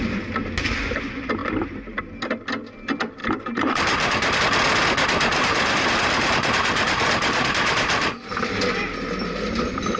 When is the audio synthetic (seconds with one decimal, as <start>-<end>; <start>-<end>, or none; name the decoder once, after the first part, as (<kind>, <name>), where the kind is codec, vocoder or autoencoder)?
1.4-2.0 (vocoder, BigVGAN v2); 3.2-4.4; 5.3-8.4